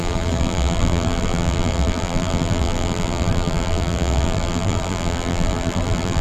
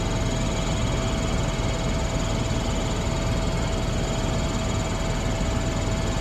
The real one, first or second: second